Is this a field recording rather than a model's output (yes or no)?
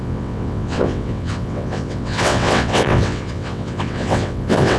no